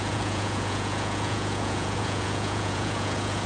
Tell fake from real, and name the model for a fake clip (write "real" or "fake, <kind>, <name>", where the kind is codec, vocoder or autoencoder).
fake, vocoder, Vocos